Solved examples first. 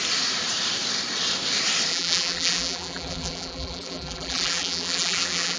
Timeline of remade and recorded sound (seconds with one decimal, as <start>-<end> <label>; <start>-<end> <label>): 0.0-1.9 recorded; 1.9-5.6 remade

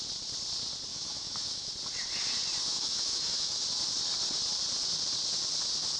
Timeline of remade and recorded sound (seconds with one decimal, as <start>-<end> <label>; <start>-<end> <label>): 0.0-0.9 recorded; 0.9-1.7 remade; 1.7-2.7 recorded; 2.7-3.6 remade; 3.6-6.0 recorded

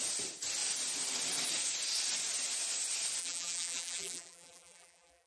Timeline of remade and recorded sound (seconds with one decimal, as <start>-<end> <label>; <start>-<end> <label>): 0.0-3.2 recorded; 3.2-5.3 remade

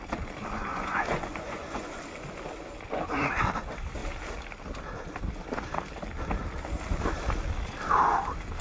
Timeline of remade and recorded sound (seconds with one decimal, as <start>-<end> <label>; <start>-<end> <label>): 0.0-0.7 recorded; 0.7-2.0 remade; 2.0-8.6 recorded

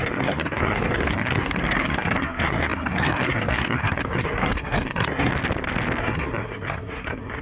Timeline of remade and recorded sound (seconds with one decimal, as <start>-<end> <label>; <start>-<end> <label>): 0.0-5.3 remade; 5.3-6.0 recorded; 6.0-7.4 remade

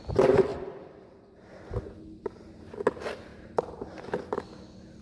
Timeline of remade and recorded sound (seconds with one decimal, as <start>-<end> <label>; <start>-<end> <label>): 0.0-3.3 recorded; 3.3-3.8 remade; 3.8-5.0 recorded

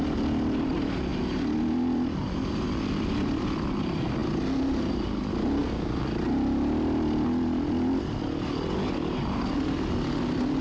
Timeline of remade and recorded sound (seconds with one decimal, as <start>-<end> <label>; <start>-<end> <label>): 0.0-10.6 recorded